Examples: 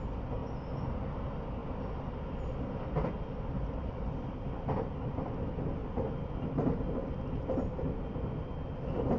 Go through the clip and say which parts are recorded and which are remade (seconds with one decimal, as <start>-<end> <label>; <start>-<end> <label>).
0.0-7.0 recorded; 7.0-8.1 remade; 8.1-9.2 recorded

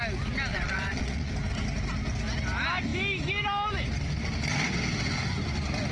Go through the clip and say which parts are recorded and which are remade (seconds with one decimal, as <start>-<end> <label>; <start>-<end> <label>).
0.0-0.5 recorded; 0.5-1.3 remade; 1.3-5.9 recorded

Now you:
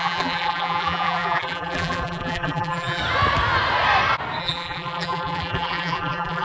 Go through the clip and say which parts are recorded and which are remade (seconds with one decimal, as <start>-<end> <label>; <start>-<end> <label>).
0.0-3.0 remade; 3.0-4.4 recorded; 4.4-6.4 remade

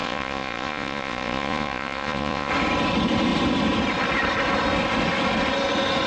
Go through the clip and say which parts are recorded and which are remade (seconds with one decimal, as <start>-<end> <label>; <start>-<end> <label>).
0.0-2.5 remade; 2.5-6.1 recorded

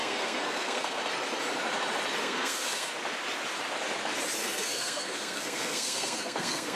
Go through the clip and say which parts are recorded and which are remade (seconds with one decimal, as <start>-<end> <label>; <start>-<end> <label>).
0.0-1.0 remade; 1.0-2.2 recorded; 2.2-2.9 remade; 2.9-4.4 recorded; 4.4-6.8 remade

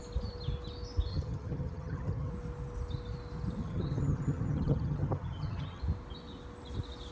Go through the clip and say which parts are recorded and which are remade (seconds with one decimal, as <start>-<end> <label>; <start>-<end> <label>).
0.0-1.1 recorded; 1.1-2.3 remade; 2.3-3.6 recorded; 3.6-5.8 remade; 5.8-7.1 recorded